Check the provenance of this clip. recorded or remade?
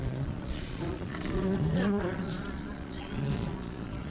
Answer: remade